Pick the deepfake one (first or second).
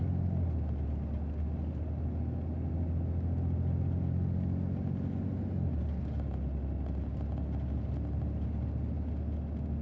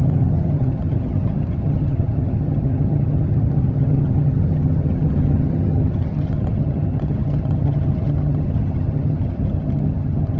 second